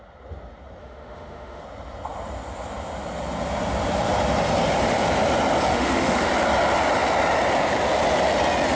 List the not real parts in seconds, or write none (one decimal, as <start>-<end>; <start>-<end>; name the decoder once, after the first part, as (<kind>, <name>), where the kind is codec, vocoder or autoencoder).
0.8-1.6 (autoencoder, DAC-VAE); 5.7-6.3